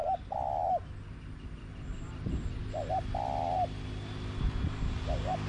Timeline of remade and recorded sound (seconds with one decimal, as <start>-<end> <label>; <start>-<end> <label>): 0.0-5.5 recorded

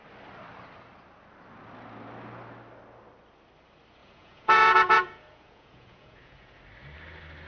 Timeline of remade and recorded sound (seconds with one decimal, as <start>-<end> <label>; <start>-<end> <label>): 0.0-4.0 recorded; 4.0-6.6 remade; 6.6-7.5 recorded

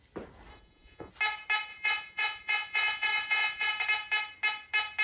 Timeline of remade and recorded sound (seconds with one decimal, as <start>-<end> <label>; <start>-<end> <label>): 0.0-0.5 recorded; 0.5-1.1 remade; 1.1-1.7 recorded; 1.7-3.7 remade; 3.7-5.0 recorded

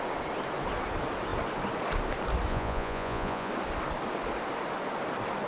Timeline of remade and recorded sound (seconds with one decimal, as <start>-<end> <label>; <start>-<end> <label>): 0.0-2.5 recorded; 2.5-3.5 remade; 3.5-5.5 recorded

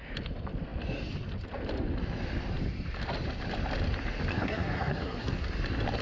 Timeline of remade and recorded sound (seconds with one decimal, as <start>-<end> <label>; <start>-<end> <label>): 0.0-4.3 recorded; 4.3-5.5 remade; 5.5-6.0 recorded